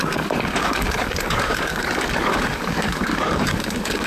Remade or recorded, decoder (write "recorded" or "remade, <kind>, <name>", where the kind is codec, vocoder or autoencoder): remade, codec, DAC